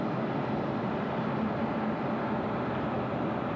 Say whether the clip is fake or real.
real